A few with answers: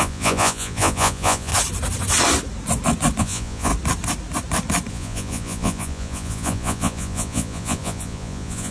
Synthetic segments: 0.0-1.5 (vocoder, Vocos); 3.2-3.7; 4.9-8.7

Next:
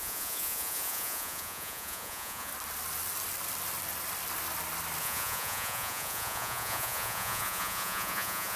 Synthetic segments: 0.0-2.5 (vocoder, Vocos); 5.0-8.6

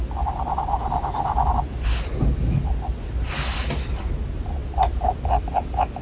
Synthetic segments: none

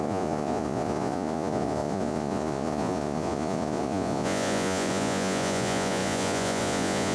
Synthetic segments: 0.0-7.1 (vocoder, Vocos)

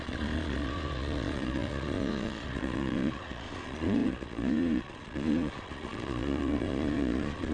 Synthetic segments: 0.0-7.5 (vocoder, Vocos)

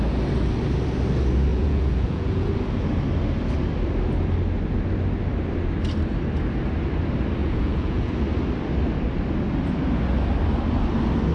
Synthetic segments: 1.5-2.5 (vocoder, Vocos); 7.4-8.1

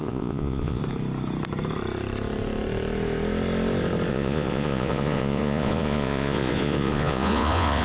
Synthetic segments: 0.0-0.8 (vocoder, Vocos); 4.1-7.8